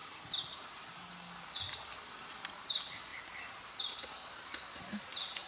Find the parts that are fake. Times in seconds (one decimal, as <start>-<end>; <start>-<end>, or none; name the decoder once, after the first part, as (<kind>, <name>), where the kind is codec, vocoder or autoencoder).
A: 0.0-0.6 (vocoder, BigVGAN v2); 3.1-4.8